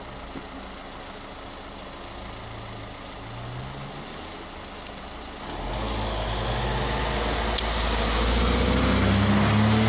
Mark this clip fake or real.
real